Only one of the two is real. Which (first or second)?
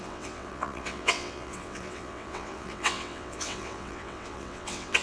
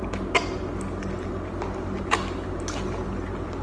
second